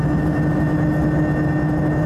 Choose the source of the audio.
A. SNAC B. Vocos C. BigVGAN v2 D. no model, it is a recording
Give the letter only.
D